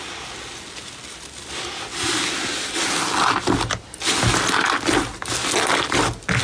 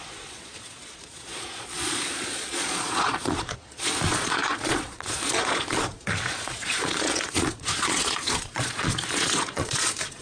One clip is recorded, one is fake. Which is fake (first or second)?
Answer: second